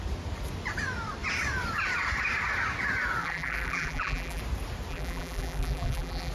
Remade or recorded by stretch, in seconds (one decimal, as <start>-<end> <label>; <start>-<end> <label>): 0.0-3.2 recorded; 3.2-4.4 remade; 4.4-4.9 recorded; 4.9-6.3 remade